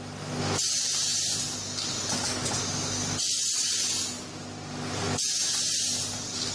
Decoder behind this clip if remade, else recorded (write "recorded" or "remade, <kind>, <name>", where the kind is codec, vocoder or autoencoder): recorded